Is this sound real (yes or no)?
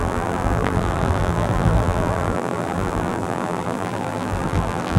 no